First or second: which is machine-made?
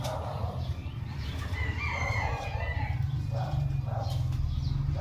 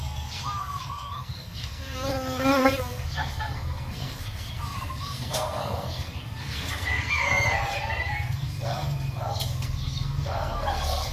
second